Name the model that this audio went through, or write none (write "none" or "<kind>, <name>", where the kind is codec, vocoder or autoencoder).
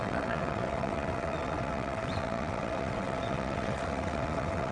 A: vocoder, WaveNeXt